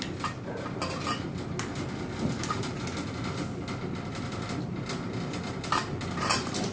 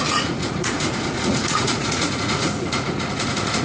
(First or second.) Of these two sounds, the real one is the first